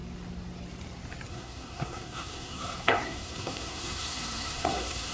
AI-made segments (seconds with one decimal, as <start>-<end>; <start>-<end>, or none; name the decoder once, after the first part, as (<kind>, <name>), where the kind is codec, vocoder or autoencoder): 1.3-5.1 (codec, SNAC)